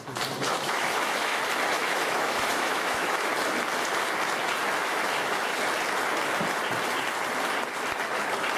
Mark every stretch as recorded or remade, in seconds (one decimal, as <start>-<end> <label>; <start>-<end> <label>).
0.0-0.5 recorded; 0.5-1.4 remade; 1.4-1.8 recorded; 1.8-3.3 remade; 3.3-4.8 recorded; 4.8-5.6 remade; 5.6-8.6 recorded